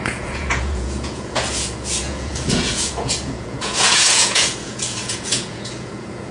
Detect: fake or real fake